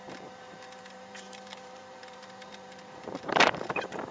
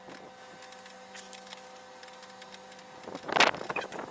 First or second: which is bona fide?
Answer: second